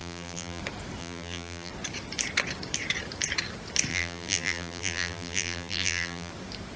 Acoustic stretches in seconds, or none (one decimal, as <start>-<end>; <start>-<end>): 0.6-1.0; 1.7-3.9; 6.3-6.8